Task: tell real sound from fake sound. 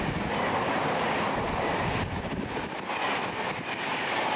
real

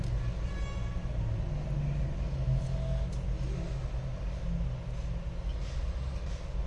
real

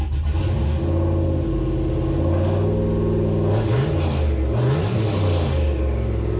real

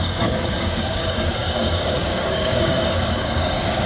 fake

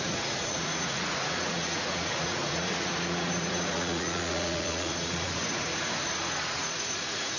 fake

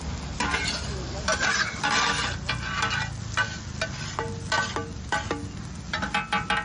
real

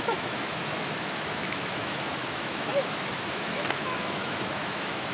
fake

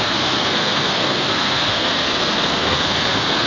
fake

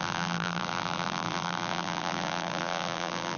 fake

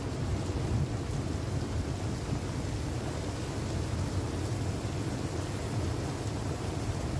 real